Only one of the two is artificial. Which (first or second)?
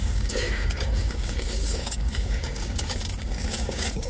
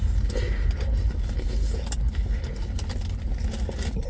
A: first